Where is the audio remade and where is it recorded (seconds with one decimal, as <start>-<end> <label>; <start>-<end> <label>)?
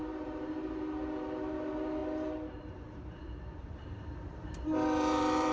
0.0-5.5 remade